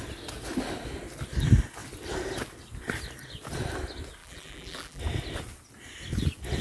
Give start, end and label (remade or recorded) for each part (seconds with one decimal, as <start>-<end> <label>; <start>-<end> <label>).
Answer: 0.0-4.2 recorded; 4.2-5.0 remade; 5.0-6.6 recorded